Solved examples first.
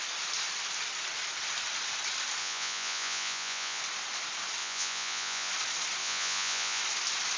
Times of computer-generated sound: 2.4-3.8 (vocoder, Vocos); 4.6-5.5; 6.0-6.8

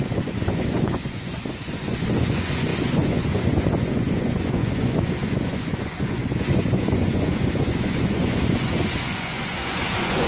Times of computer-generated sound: 0.0-10.3 (vocoder, Vocos)

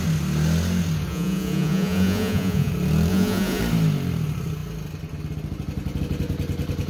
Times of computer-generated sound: 1.1-2.7 (vocoder, Vocos); 3.1-3.6

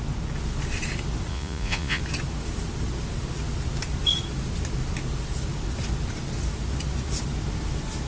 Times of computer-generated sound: 1.3-2.0 (vocoder, Vocos)